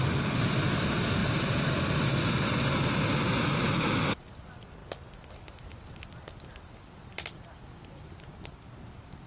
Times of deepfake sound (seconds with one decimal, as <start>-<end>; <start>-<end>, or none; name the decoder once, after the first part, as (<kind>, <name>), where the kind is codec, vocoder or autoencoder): none